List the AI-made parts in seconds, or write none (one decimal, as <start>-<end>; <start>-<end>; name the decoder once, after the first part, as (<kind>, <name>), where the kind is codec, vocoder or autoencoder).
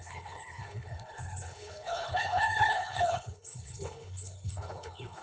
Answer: 0.0-5.2 (codec, HILCodec)